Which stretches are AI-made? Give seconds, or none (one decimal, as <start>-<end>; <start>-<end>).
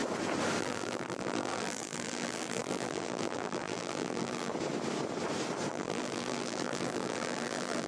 0.6-4.5; 5.7-7.9